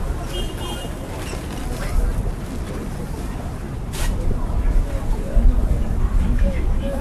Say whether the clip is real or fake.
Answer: real